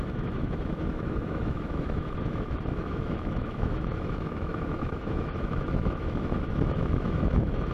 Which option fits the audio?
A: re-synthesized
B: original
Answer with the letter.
A